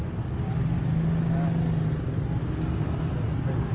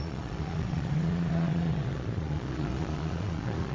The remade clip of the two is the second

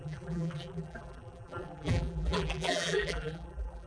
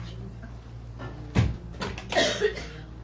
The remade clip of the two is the first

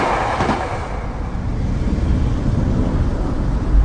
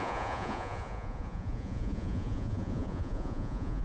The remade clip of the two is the second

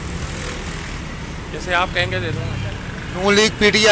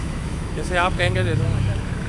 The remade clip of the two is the second